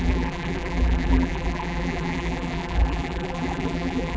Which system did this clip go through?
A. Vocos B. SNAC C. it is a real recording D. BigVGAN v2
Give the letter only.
D